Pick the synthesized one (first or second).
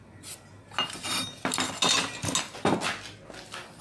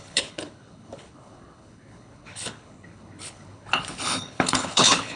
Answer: second